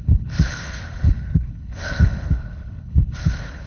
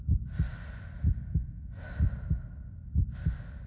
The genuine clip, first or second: second